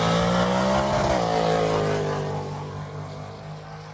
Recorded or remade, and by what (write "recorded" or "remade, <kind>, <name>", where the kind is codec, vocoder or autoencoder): recorded